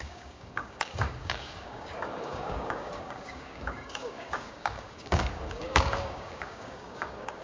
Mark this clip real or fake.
fake